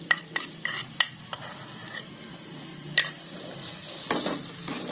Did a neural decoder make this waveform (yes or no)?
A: no